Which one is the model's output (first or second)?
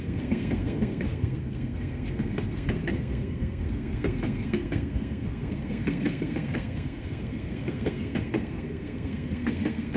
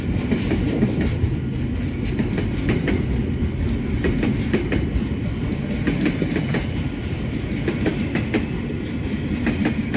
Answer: first